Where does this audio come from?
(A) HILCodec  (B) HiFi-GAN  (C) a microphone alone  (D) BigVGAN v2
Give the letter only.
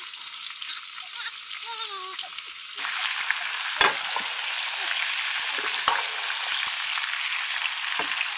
C